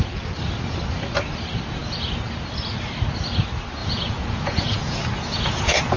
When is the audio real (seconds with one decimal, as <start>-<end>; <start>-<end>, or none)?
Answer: 0.0-3.8